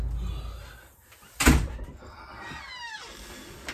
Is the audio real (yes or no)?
yes